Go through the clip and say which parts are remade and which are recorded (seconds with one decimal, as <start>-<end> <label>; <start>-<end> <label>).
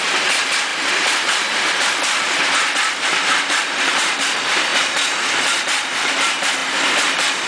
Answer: 0.0-7.5 remade